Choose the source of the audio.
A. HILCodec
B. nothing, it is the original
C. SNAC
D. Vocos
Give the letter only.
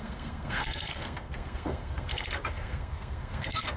C